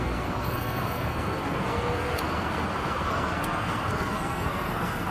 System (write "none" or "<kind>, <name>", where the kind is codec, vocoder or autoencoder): codec, SNAC